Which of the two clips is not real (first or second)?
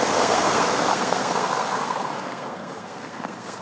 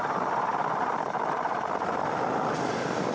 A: first